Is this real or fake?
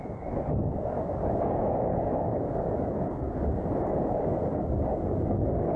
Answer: fake